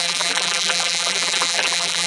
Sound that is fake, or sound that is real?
fake